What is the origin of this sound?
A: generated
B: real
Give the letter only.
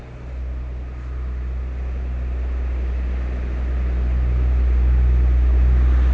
B